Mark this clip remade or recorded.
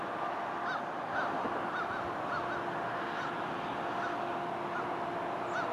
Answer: recorded